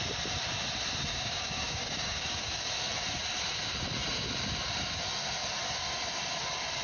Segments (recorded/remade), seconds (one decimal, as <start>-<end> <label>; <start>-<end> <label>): 0.0-1.1 recorded; 1.1-2.7 remade; 2.7-6.8 recorded